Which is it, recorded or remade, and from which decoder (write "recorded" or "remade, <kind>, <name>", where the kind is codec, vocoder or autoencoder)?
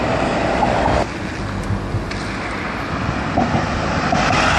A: recorded